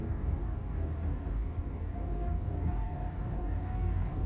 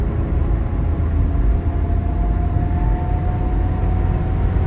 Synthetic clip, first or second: first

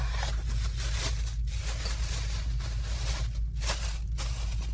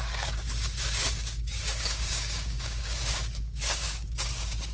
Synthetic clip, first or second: second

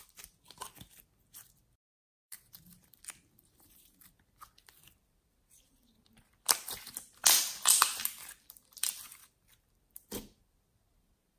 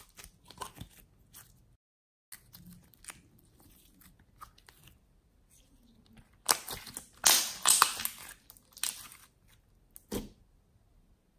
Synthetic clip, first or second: first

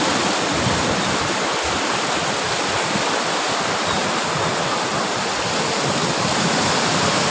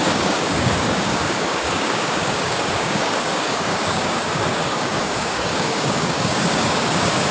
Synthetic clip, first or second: second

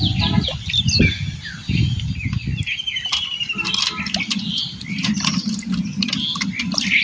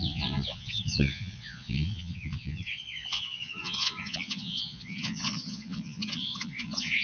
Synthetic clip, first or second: second